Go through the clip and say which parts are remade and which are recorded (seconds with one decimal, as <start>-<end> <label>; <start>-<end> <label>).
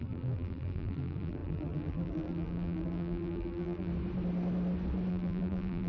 0.0-3.9 remade; 3.9-5.1 recorded; 5.1-5.9 remade